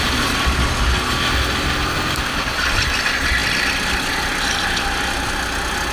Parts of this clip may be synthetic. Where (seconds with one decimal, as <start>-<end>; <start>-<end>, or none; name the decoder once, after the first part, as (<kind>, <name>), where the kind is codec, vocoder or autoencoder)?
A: none